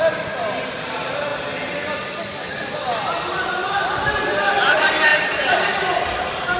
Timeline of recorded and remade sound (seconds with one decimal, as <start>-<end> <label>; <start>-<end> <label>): 0.0-5.1 recorded; 5.1-5.7 remade; 5.7-6.6 recorded